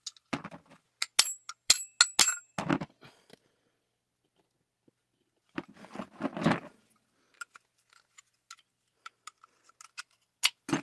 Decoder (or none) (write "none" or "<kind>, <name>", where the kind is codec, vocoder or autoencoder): none